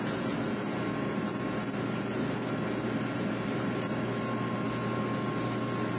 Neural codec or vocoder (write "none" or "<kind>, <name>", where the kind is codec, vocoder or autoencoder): none